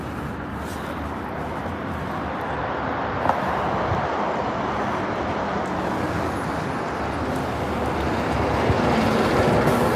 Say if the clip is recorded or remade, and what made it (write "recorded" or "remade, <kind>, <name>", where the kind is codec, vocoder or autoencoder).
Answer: recorded